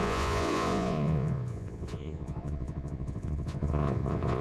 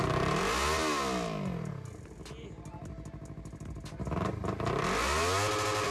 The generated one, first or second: first